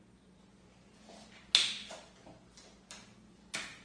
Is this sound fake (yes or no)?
no